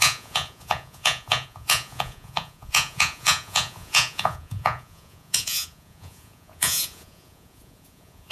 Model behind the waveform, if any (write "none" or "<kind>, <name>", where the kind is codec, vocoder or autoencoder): vocoder, Vocos